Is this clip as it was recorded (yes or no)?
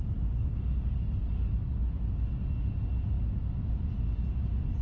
yes